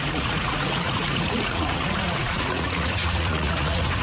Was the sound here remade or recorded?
remade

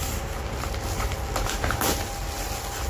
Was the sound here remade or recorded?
recorded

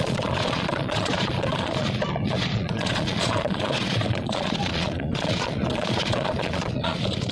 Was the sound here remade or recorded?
remade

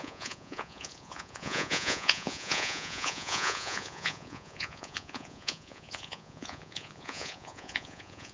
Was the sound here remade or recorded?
remade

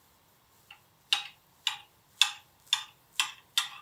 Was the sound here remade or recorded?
recorded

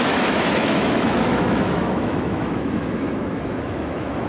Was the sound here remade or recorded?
remade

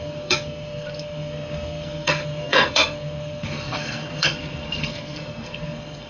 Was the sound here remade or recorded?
remade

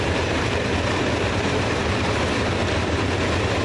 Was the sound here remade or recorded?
remade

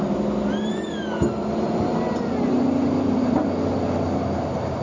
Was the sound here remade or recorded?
recorded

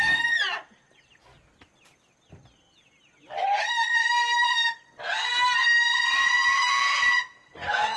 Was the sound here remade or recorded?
recorded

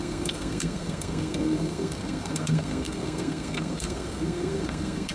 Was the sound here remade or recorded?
remade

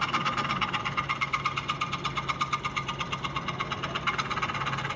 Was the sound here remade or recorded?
recorded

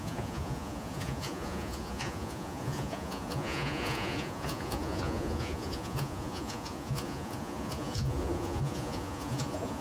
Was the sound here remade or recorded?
remade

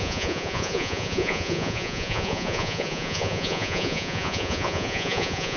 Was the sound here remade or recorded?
remade